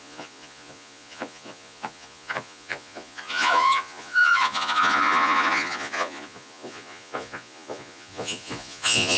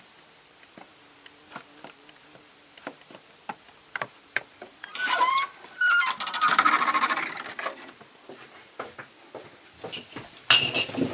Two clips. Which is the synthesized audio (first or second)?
first